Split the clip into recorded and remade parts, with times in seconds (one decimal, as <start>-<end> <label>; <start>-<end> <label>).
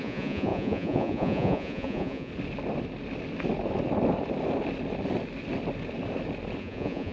0.0-2.3 remade; 2.3-6.6 recorded; 6.6-7.1 remade